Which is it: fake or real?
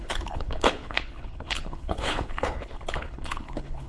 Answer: fake